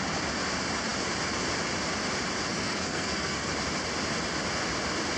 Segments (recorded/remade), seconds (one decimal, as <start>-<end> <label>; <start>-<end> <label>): 0.0-2.5 recorded; 2.5-3.5 remade; 3.5-5.2 recorded